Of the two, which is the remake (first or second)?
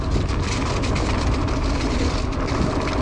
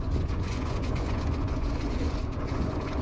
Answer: second